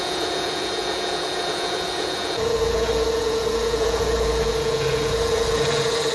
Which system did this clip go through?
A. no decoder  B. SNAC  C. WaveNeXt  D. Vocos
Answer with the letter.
D